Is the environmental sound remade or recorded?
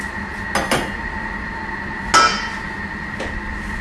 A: recorded